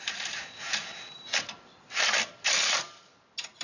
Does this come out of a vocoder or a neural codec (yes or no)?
yes